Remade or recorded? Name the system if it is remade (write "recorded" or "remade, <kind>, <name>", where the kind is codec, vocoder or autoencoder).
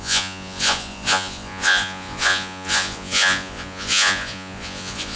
remade, vocoder, Vocos